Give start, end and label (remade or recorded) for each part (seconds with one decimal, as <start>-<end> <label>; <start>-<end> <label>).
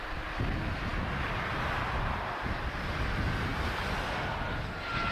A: 0.0-5.1 recorded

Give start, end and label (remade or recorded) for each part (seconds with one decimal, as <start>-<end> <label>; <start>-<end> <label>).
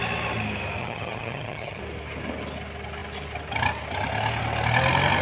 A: 0.0-0.8 recorded; 0.8-1.8 remade; 1.8-5.2 recorded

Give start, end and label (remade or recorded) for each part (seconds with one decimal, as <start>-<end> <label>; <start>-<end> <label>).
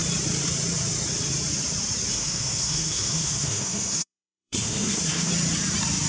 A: 0.0-2.1 recorded; 2.1-5.3 remade; 5.3-6.1 recorded